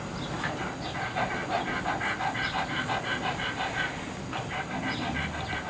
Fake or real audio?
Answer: real